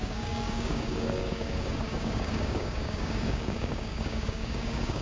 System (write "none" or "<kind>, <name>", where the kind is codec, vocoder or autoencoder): codec, DAC